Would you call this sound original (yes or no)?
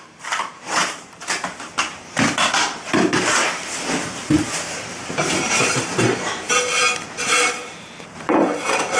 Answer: no